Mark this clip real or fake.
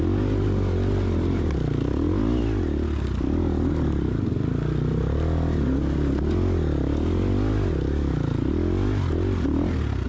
real